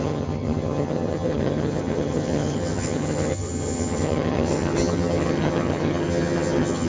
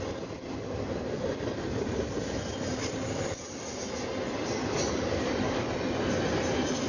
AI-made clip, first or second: first